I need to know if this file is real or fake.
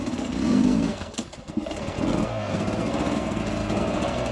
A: fake